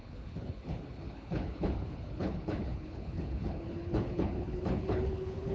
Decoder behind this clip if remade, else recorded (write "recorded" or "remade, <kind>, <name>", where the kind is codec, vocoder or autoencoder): remade, codec, HILCodec